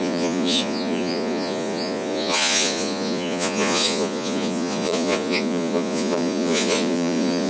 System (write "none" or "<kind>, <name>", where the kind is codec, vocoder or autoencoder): vocoder, Vocos